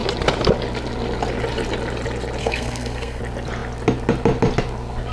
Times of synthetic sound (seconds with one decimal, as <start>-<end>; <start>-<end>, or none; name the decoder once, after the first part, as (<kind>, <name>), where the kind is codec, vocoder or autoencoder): 2.4-3.2 (codec, SNAC)